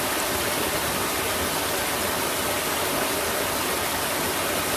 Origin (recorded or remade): recorded